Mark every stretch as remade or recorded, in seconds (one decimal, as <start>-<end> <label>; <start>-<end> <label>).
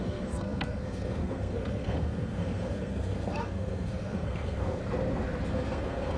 0.0-4.8 remade; 4.8-5.5 recorded; 5.5-6.2 remade